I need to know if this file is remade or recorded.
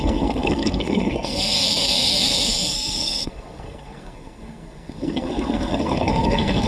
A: remade